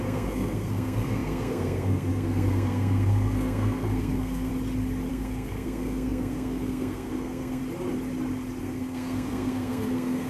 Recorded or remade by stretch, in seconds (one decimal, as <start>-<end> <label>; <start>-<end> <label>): 0.0-4.5 remade; 4.5-5.1 recorded; 5.1-7.6 remade; 7.6-8.6 recorded; 8.6-10.3 remade